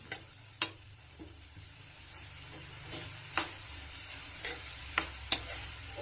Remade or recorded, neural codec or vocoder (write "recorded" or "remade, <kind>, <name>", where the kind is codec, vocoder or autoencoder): remade, vocoder, BigVGAN v2